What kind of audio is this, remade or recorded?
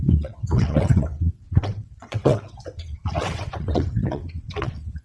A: remade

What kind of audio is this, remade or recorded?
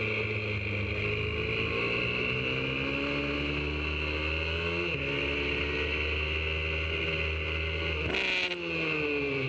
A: recorded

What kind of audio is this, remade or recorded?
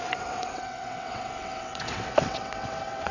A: remade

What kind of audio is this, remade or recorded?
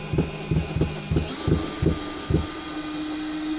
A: recorded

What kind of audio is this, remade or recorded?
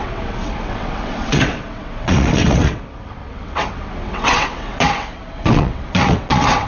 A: remade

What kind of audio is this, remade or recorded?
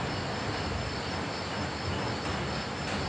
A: recorded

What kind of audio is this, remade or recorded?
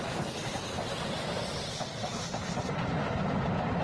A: recorded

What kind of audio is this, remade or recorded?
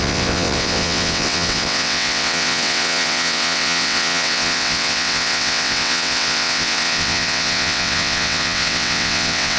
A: remade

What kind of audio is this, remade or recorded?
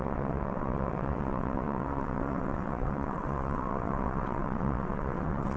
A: remade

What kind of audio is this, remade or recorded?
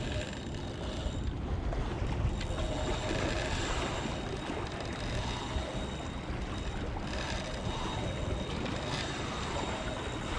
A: recorded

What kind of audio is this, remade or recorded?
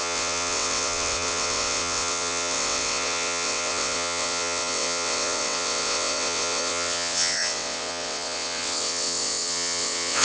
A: remade